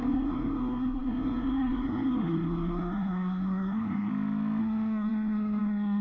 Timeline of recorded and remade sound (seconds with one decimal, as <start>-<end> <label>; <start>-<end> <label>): 0.0-4.1 remade; 4.1-4.6 recorded; 4.6-6.0 remade